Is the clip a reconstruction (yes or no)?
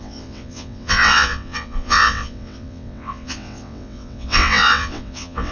yes